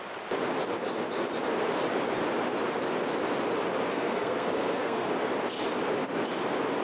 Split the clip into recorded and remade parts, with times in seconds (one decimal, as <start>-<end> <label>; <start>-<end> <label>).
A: 0.0-3.9 recorded; 3.9-5.1 remade; 5.1-6.8 recorded